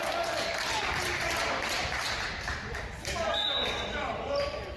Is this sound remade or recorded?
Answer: remade